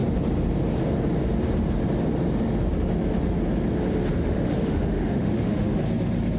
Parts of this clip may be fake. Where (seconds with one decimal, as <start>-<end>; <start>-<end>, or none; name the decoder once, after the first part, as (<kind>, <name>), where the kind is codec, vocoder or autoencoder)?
4.1-5.8 (autoencoder, DAC-VAE)